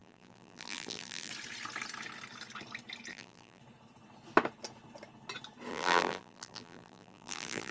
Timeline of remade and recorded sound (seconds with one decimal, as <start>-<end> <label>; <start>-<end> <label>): 0.0-1.3 remade; 1.3-3.1 recorded; 3.1-3.6 remade; 3.6-5.7 recorded; 5.7-7.7 remade